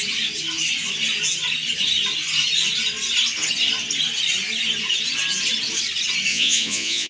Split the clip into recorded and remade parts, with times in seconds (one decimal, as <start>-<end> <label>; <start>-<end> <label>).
0.0-6.3 recorded; 6.3-7.1 remade